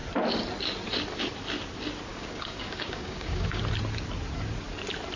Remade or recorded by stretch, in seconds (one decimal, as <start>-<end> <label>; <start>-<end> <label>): 0.0-2.1 recorded; 2.1-3.6 remade; 3.6-5.2 recorded